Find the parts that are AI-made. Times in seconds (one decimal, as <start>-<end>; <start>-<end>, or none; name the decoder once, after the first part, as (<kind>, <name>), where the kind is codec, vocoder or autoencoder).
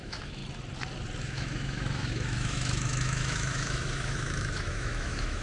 0.0-0.4 (autoencoder, DAC-VAE); 1.2-5.4